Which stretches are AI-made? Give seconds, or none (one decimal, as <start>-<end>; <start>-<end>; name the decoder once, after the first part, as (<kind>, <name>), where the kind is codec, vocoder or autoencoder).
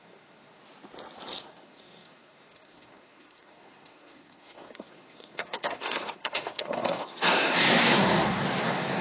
0.0-0.6 (codec, SNAC); 1.4-9.0